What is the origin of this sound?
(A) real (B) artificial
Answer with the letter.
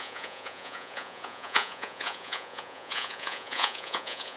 B